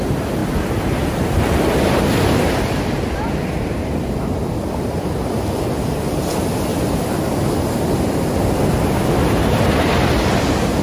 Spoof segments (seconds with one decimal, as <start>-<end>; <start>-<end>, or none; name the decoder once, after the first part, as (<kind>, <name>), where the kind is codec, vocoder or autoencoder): 6.7-8.2 (vocoder, BigVGAN v2)